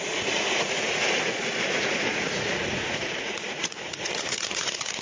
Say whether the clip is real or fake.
fake